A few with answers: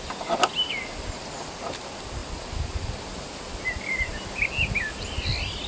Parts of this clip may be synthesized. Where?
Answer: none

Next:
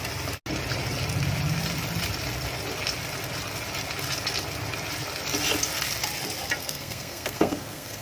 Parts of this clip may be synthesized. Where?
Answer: 6.6-8.0 (codec, SNAC)

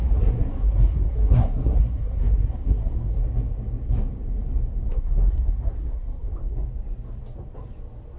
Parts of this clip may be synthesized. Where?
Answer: 0.0-3.2 (codec, SNAC); 4.9-6.4